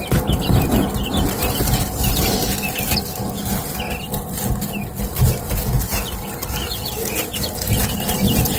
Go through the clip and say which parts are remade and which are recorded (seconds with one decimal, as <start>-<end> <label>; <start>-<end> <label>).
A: 0.0-8.6 recorded